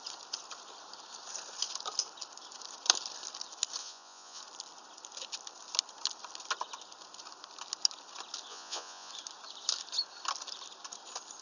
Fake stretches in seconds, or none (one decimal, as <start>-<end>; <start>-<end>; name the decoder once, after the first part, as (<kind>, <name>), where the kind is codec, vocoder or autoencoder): 3.8-4.4 (vocoder, Vocos); 8.5-9.1